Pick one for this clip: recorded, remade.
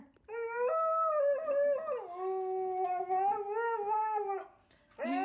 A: recorded